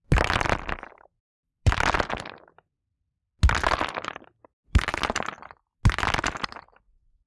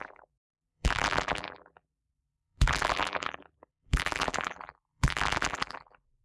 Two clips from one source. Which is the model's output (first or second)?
second